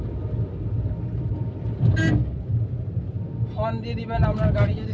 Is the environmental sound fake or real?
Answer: real